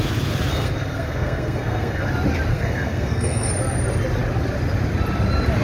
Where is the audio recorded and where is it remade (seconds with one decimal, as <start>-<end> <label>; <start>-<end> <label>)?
0.0-0.5 recorded; 0.5-2.1 remade; 2.1-2.5 recorded; 2.5-3.5 remade; 3.5-5.6 recorded